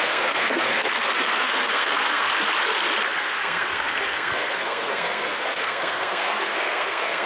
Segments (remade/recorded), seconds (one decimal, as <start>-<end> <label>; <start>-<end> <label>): 0.0-2.3 remade; 2.3-3.2 recorded; 3.2-7.3 remade

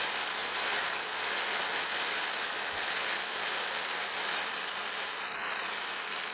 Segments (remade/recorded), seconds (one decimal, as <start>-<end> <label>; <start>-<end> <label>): 0.0-6.3 recorded

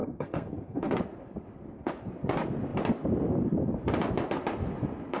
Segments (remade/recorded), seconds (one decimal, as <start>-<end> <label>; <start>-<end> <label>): 0.0-0.9 remade; 0.9-5.2 recorded

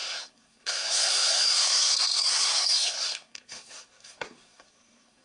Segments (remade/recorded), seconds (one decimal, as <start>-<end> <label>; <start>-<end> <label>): 0.0-5.2 remade

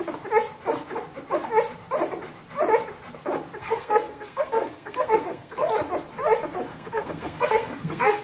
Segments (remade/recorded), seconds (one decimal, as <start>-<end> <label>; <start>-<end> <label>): 0.0-3.6 recorded; 3.6-5.7 remade; 5.7-6.7 recorded; 6.7-8.2 remade

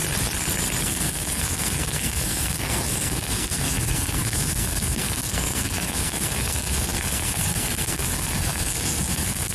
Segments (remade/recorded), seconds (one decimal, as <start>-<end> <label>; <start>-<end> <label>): 0.0-0.8 recorded; 0.8-9.5 remade